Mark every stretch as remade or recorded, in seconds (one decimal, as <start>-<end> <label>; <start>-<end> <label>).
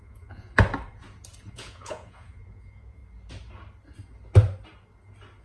0.0-0.5 remade; 0.5-1.5 recorded; 1.5-3.0 remade; 3.0-5.4 recorded